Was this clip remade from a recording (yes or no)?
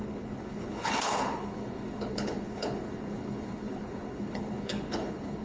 yes